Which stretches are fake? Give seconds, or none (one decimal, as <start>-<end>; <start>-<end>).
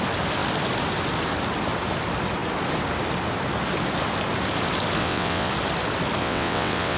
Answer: 5.0-5.5; 6.2-7.0